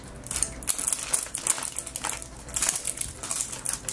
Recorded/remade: recorded